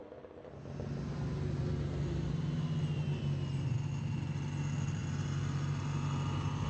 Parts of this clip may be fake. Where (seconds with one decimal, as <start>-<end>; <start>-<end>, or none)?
none